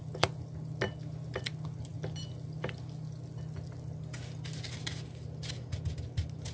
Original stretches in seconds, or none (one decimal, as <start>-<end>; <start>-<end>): 0.0-6.5